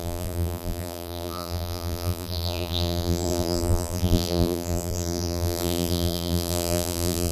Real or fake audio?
fake